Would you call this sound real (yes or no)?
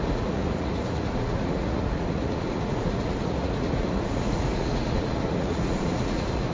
no